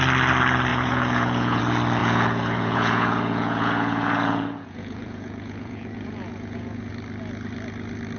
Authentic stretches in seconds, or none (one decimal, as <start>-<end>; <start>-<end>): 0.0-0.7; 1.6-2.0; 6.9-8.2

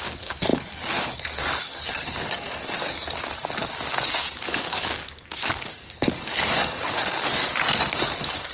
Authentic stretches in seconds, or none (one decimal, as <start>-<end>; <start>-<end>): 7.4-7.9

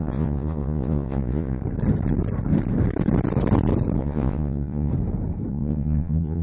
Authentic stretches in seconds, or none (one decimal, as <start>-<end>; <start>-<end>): 1.6-4.0; 4.9-5.5